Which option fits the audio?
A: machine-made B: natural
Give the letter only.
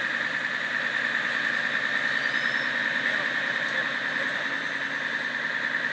B